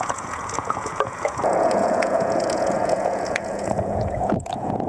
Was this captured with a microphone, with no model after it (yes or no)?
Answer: no